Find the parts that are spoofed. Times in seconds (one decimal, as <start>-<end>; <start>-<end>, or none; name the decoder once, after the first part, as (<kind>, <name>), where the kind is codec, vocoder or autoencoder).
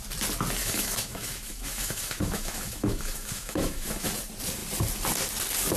0.6-4.1 (autoencoder, DAC-VAE)